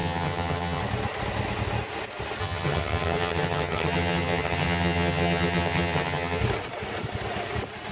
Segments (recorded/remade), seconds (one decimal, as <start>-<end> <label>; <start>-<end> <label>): 0.0-0.8 remade; 0.8-2.4 recorded; 2.4-6.4 remade; 6.4-7.9 recorded